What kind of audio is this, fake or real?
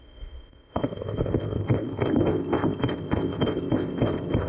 fake